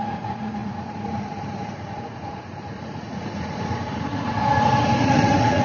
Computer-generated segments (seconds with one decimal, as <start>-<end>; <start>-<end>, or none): 0.0-5.6